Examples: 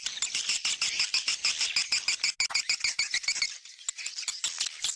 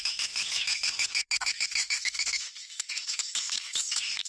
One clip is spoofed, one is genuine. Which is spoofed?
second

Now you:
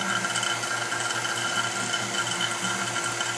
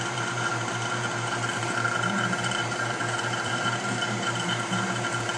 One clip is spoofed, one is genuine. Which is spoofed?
second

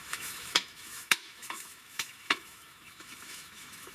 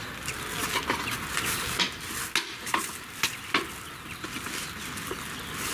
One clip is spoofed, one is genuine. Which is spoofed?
first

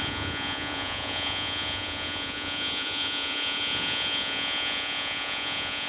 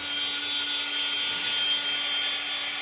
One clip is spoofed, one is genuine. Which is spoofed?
first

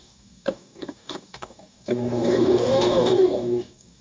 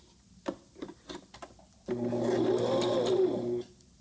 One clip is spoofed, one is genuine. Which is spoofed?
first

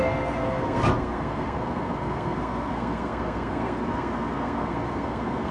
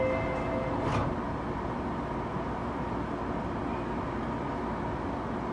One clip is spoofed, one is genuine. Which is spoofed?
first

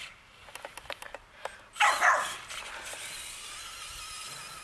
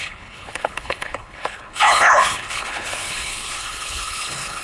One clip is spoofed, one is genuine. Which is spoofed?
second